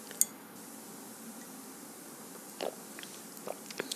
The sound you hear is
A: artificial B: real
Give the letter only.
B